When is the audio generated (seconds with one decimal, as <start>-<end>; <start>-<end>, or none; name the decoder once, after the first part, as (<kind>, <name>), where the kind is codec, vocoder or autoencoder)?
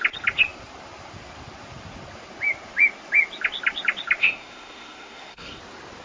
4.2-5.6 (codec, SNAC)